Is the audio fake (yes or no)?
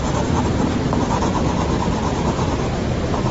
no